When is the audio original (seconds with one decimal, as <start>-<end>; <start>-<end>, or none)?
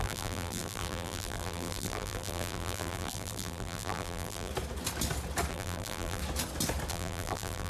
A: 4.5-5.5; 6.2-6.9